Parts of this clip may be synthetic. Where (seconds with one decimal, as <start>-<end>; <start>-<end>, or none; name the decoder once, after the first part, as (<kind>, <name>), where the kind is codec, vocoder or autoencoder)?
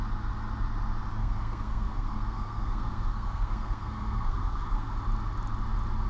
1.2-4.9 (codec, SNAC)